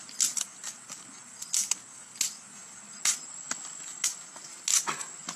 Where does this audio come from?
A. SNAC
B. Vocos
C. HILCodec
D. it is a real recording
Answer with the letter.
D